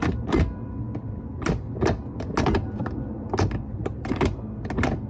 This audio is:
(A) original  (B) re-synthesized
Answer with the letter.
A